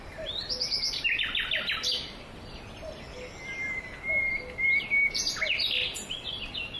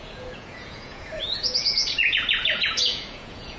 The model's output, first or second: second